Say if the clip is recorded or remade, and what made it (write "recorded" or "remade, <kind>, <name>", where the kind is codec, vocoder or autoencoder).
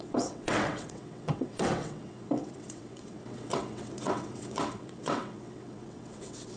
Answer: remade, vocoder, WaveNeXt